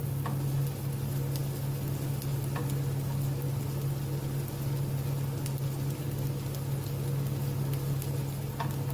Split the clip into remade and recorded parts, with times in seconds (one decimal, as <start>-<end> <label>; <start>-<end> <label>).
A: 0.0-8.9 recorded